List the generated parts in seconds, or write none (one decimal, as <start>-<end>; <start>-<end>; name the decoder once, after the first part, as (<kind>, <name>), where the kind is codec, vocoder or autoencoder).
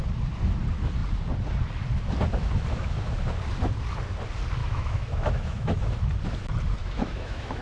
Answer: 4.6-5.9 (autoencoder, DAC-VAE); 6.8-7.6